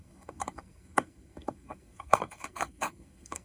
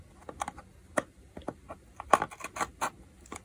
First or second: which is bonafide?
second